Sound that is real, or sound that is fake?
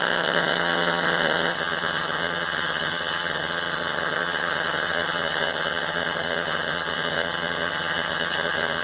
fake